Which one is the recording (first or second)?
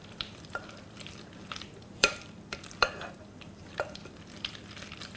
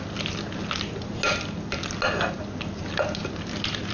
second